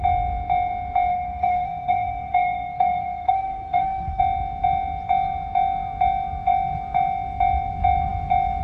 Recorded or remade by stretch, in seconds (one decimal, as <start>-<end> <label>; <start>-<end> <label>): 0.0-1.1 recorded; 1.1-4.2 remade; 4.2-8.6 recorded